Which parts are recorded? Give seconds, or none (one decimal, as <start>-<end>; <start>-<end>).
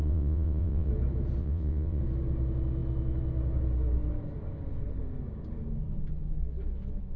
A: 0.9-1.4; 2.0-7.2